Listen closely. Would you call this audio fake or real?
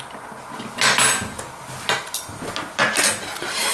real